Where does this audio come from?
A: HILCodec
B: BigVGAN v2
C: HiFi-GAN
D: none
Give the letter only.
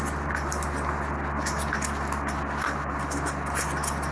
D